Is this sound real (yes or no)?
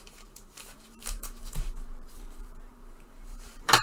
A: no